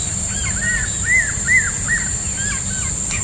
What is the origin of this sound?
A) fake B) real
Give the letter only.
B